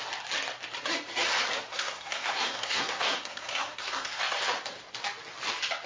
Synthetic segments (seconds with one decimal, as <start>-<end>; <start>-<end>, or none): 1.7-4.2